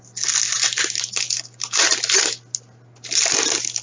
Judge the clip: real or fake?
real